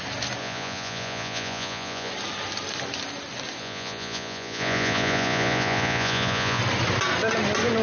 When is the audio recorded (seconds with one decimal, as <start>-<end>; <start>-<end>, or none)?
0.0-0.4; 2.1-3.6; 6.6-7.8

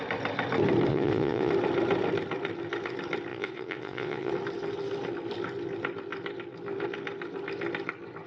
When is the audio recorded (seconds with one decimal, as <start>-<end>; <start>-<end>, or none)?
0.0-0.9; 1.5-3.3; 4.3-8.3

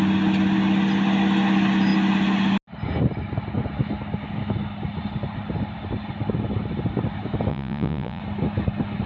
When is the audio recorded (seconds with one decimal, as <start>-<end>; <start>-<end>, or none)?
0.0-7.5; 8.2-9.1